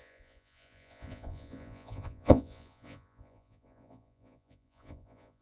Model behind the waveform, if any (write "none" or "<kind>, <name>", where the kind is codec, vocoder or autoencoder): vocoder, Vocos